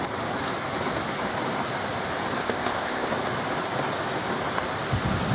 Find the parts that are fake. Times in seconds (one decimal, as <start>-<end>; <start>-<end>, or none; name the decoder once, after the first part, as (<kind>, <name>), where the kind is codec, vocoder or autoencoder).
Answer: 2.4-3.1 (codec, ZipCodec)